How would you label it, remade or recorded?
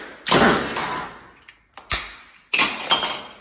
recorded